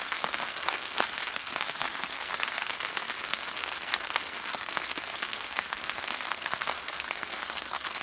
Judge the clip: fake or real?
fake